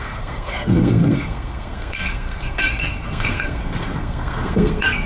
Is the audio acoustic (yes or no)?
no